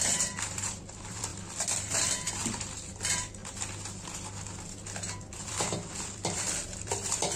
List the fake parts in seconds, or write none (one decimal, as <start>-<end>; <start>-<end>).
0.0-3.4; 5.2-7.4